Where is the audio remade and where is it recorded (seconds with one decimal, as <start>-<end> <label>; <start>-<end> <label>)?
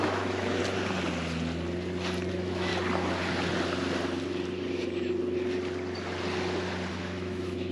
0.0-0.6 remade; 0.6-2.3 recorded; 2.3-2.7 remade; 2.7-6.9 recorded; 6.9-7.7 remade